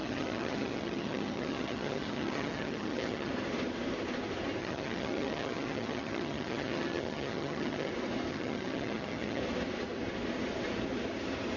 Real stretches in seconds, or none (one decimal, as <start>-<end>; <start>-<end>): 3.3-4.6; 7.9-8.3; 9.4-11.6